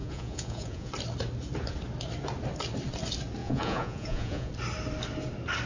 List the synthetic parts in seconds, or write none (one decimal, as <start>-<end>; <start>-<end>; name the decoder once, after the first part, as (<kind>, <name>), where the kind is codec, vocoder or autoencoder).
0.0-0.9 (vocoder, Vocos); 3.4-4.5